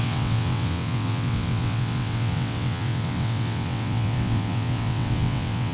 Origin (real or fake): fake